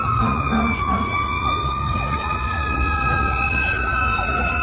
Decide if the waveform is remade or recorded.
remade